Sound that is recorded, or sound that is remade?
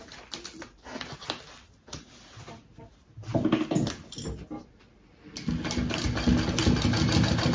recorded